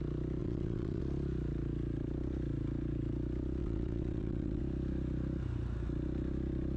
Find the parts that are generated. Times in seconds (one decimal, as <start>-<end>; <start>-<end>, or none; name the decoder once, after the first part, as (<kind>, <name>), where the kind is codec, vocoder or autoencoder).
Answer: 0.4-1.0 (vocoder, WaveNeXt); 3.6-4.6